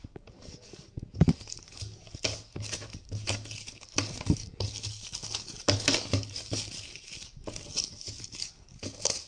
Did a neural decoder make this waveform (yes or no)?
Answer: yes